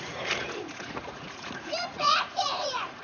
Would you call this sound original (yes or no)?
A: no